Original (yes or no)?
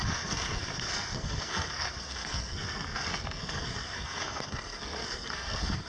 no